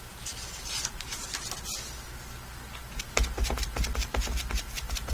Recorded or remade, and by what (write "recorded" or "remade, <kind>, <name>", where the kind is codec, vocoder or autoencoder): recorded